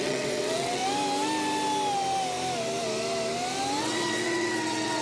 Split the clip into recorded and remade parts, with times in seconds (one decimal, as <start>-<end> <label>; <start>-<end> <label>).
0.0-0.8 remade; 0.8-3.8 recorded; 3.8-5.0 remade